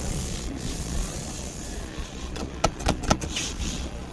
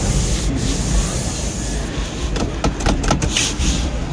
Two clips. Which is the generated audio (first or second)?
first